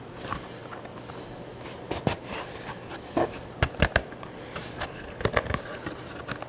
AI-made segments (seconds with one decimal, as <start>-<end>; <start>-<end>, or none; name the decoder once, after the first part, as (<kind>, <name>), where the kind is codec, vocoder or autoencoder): none